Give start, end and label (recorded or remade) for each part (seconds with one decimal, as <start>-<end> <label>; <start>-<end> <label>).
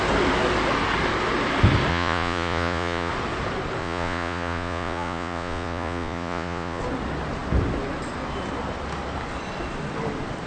0.0-1.9 recorded; 1.9-3.1 remade; 3.1-3.8 recorded; 3.8-6.8 remade; 6.8-10.5 recorded